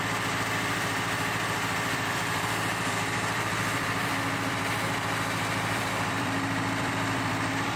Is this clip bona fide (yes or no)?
no